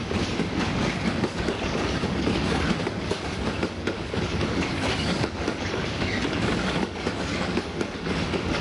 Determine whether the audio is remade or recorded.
remade